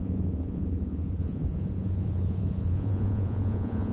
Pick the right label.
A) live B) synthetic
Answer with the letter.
B